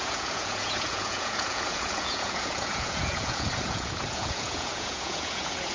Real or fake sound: fake